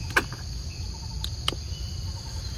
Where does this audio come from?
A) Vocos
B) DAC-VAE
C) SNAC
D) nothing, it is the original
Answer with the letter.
D